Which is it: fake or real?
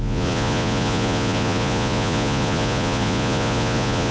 fake